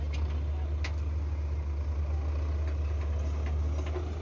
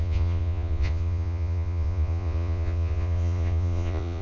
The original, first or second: first